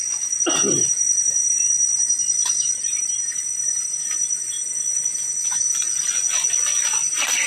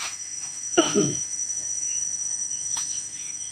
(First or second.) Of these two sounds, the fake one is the second